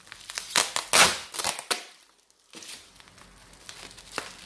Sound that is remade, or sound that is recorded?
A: recorded